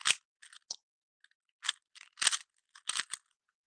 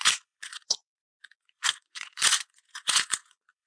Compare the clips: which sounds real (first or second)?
first